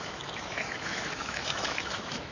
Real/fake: fake